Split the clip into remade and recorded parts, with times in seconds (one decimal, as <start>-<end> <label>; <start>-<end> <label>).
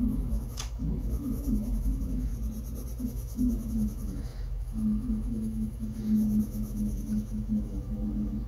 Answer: 0.0-2.3 remade; 2.3-3.0 recorded; 3.0-8.5 remade